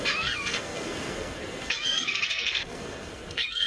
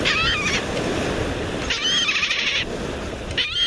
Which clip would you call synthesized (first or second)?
first